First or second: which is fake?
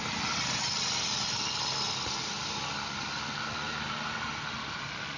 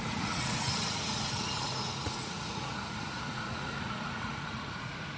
second